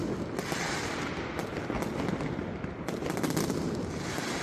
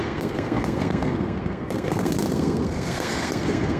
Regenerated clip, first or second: second